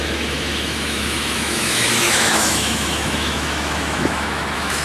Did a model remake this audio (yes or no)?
yes